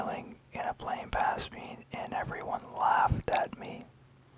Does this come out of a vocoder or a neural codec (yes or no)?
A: no